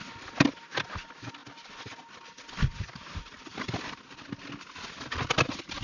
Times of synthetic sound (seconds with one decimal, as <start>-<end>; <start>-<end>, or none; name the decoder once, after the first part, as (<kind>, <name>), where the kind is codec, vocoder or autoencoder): none